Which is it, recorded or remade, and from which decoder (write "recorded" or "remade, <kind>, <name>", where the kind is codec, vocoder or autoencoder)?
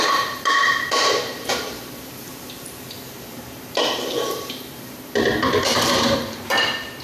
remade, vocoder, BigVGAN v2